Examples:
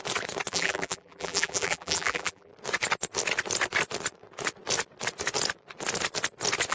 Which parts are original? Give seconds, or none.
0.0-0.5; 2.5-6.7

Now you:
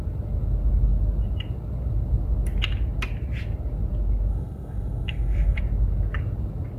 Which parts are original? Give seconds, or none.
0.0-4.3; 5.6-6.8